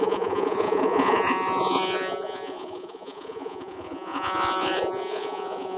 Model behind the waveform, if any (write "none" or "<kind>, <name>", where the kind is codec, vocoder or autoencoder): vocoder, Vocos